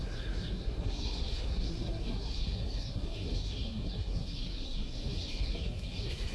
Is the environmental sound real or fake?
fake